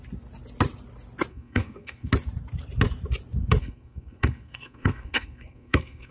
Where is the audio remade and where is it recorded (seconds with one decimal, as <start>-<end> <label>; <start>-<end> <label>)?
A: 0.0-1.3 recorded; 1.3-2.1 remade; 2.1-3.6 recorded; 3.6-6.1 remade

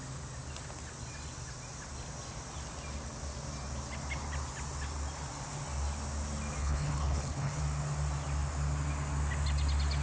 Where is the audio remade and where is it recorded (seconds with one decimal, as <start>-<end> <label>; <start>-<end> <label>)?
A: 0.0-6.6 recorded; 6.6-7.6 remade; 7.6-10.0 recorded

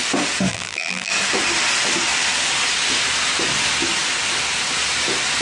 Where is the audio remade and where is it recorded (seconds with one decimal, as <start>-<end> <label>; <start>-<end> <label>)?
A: 0.0-0.5 recorded; 0.5-1.1 remade; 1.1-5.4 recorded

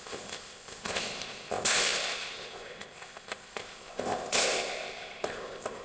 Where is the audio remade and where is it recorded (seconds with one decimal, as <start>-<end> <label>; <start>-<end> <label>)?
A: 0.0-5.8 remade

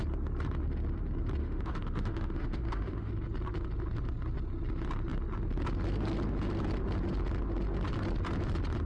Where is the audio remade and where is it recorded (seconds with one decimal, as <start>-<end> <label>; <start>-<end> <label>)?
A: 0.0-1.4 recorded; 1.4-3.1 remade; 3.1-8.9 recorded

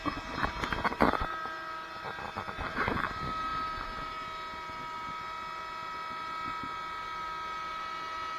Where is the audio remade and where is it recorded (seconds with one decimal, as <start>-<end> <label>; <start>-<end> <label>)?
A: 0.0-8.4 recorded

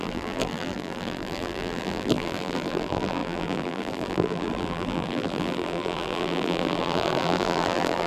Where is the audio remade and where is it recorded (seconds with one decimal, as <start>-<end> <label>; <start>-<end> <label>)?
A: 0.0-8.1 remade